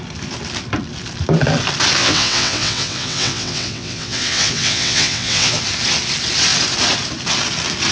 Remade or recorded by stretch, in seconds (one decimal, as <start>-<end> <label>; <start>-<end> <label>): 0.0-2.0 recorded; 2.0-5.6 remade; 5.6-7.9 recorded